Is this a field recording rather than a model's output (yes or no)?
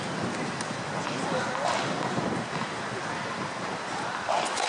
yes